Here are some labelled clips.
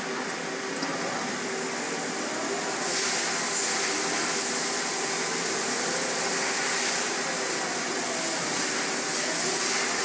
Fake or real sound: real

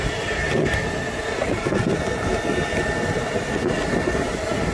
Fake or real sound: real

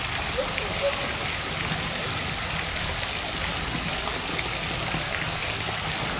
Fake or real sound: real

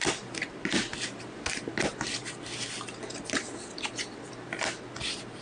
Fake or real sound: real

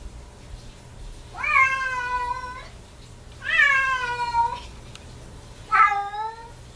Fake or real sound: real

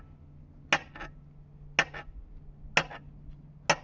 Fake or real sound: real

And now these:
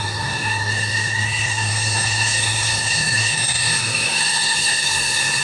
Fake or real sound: fake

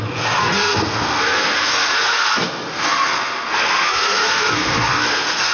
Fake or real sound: fake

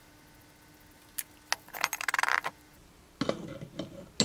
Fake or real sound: real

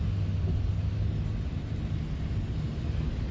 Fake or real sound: real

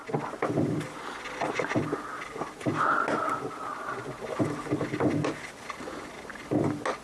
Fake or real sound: real